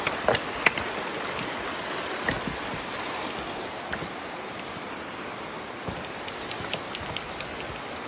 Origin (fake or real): real